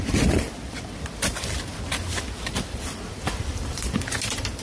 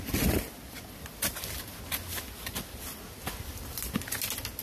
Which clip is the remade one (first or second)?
first